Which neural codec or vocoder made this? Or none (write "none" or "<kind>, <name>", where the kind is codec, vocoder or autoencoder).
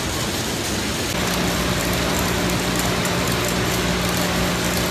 none